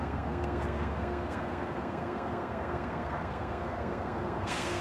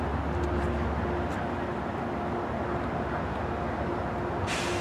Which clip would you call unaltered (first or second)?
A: second